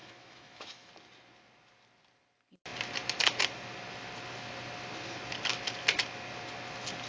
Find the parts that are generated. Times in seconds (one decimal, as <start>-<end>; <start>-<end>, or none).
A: 0.0-0.9